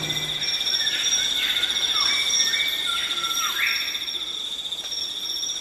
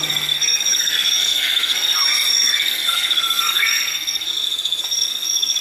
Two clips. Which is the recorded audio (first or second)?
first